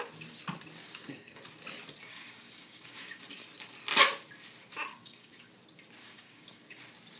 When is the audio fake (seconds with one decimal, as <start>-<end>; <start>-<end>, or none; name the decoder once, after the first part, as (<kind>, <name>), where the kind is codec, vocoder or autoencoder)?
0.8-1.4 (codec, DAC); 2.1-3.2; 4.9-5.5; 6.0-6.8